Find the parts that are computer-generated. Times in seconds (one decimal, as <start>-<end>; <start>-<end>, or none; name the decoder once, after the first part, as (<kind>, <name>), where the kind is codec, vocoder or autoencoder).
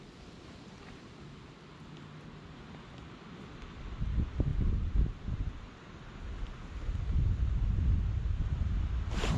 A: none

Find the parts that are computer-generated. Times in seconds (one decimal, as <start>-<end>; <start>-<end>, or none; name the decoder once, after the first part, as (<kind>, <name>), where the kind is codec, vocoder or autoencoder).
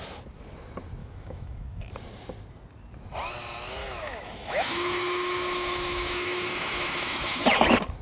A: 1.0-1.9 (autoencoder, DAC-VAE); 3.8-7.4